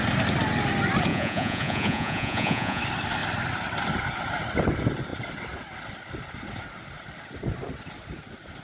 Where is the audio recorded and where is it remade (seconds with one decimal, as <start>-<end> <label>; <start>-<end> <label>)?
0.0-1.1 recorded; 1.1-2.8 remade; 2.8-8.6 recorded